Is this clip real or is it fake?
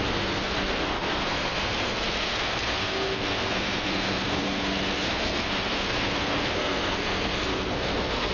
fake